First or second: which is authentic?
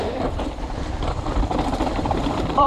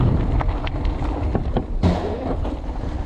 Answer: second